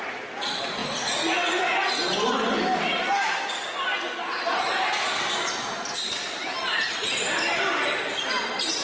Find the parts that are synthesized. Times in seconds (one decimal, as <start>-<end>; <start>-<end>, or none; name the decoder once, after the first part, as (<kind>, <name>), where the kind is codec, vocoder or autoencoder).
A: none